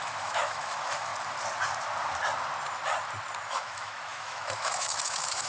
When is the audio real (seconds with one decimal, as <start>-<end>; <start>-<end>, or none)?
1.1-3.5